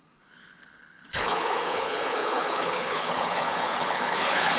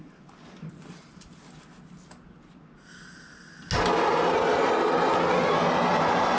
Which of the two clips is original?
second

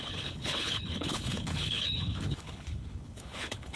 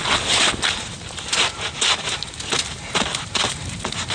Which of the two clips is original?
second